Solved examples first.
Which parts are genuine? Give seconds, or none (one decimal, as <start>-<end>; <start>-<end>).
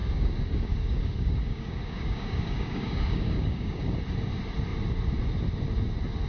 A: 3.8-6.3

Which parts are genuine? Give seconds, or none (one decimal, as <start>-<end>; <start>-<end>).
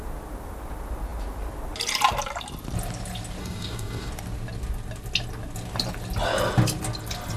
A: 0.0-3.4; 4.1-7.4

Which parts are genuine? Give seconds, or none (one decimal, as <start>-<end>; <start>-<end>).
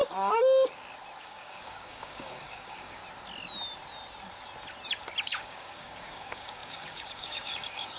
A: 0.0-1.2; 3.0-5.2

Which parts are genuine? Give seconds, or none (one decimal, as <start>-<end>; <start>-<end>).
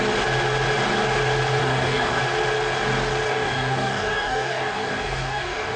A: 0.0-1.6; 2.2-3.3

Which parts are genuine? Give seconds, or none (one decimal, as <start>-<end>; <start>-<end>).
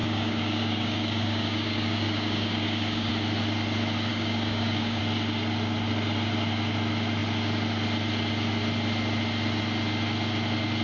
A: 3.1-4.1; 5.0-10.8